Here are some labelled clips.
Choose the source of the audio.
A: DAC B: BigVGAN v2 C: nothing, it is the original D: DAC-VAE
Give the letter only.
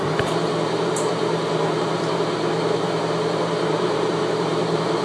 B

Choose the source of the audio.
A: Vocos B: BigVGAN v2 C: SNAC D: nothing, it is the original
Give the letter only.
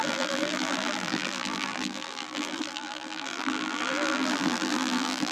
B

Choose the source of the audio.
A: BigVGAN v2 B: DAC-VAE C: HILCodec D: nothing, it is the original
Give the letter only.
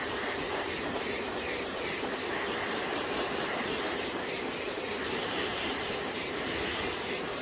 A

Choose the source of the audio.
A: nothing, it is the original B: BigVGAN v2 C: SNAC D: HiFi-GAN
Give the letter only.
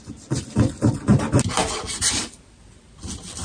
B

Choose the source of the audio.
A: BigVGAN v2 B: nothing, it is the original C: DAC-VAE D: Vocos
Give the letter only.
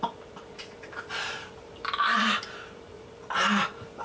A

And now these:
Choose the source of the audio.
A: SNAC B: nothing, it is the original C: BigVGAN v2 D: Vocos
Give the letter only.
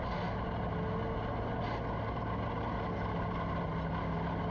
B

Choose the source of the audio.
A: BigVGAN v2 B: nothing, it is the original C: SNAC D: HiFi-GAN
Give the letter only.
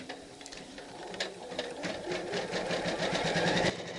A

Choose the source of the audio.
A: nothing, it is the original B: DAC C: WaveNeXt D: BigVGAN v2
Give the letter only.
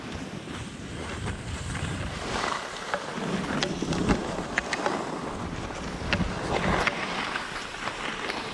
A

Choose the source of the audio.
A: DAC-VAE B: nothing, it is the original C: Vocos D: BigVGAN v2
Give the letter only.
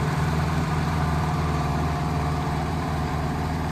D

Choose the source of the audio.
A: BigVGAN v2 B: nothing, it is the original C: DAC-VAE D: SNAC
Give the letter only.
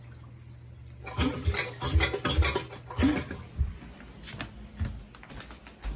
B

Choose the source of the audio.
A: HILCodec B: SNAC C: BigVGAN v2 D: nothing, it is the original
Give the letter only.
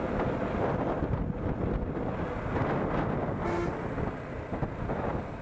D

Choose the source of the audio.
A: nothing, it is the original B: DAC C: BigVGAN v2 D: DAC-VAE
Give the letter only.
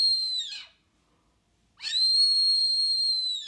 A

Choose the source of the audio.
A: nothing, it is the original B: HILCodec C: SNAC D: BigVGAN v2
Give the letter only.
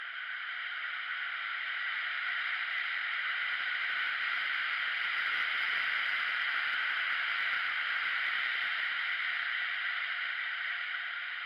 D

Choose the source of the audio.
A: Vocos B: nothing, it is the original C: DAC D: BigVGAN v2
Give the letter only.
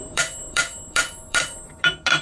D